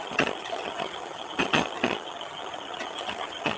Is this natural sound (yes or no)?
no